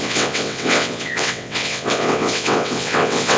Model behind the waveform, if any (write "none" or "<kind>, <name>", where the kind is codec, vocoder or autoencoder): vocoder, WaveNeXt